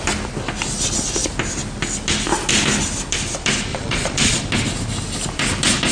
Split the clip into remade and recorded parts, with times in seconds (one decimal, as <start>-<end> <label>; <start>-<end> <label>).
0.0-3.7 recorded; 3.7-4.4 remade; 4.4-5.9 recorded